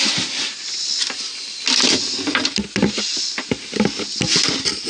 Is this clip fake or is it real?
real